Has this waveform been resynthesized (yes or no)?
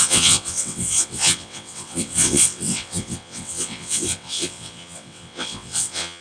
yes